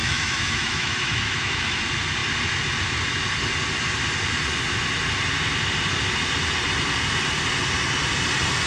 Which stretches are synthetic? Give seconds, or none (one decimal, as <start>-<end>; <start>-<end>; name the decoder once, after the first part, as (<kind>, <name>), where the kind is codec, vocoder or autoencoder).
0.0-1.8 (autoencoder, DAC-VAE)

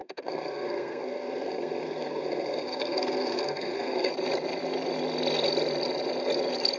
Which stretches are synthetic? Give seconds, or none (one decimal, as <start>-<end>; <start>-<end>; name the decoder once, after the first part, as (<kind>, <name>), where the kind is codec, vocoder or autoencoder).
0.0-4.1 (codec, SNAC)

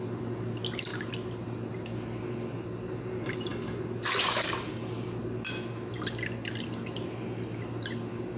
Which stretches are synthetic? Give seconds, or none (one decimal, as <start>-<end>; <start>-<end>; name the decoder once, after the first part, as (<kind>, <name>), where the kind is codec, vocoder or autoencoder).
none

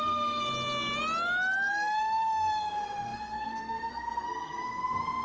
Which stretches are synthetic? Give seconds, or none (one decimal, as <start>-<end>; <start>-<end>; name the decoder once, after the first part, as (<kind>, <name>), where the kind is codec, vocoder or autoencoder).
0.0-0.5 (codec, SNAC); 1.7-5.2

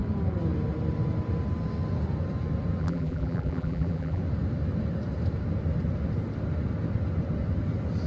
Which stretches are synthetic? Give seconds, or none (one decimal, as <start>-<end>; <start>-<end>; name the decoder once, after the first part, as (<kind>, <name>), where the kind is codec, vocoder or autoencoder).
2.8-4.2 (vocoder, BigVGAN v2)

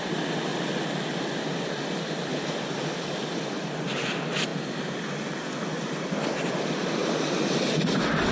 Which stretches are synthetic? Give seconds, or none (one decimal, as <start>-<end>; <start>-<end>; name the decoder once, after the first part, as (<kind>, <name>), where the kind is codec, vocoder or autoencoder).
0.0-0.5 (vocoder, BigVGAN v2); 1.4-4.5; 6.5-8.3

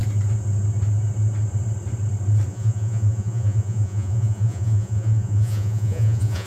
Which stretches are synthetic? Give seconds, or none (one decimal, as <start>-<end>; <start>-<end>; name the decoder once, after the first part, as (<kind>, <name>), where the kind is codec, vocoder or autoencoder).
2.5-6.5 (vocoder, Vocos)